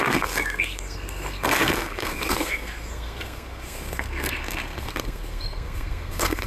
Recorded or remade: remade